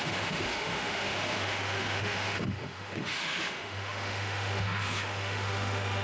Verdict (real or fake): fake